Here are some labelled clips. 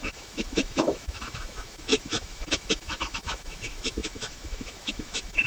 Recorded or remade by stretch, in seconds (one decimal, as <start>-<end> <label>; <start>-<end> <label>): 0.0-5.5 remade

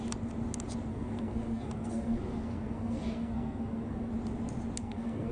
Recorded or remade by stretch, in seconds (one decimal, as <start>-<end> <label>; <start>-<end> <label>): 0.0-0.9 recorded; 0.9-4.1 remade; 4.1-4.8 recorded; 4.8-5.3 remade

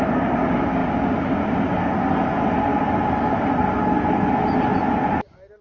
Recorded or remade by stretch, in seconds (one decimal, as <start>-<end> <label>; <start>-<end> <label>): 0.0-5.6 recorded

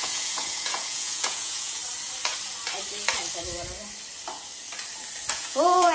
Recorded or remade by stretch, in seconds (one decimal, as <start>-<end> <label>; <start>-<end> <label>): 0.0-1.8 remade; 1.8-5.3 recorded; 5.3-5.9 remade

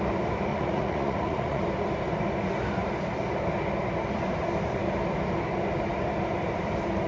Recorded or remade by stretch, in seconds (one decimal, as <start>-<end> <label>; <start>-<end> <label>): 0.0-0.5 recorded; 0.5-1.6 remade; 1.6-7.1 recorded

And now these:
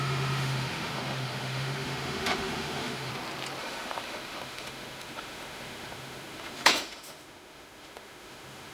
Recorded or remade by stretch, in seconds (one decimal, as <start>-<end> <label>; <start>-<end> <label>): 0.0-3.1 remade; 3.1-3.6 recorded; 3.6-8.7 remade

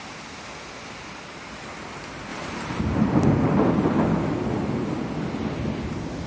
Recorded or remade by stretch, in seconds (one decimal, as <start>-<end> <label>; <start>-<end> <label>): 0.0-2.3 recorded; 2.3-2.8 remade; 2.8-6.3 recorded